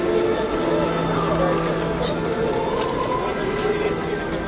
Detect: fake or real real